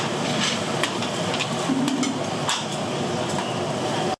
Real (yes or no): yes